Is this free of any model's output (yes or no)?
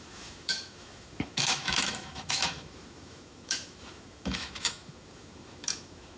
no